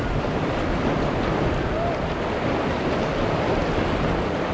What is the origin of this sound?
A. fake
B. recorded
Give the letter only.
B